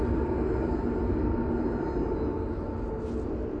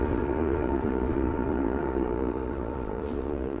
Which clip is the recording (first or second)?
first